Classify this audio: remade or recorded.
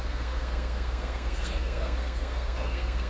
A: remade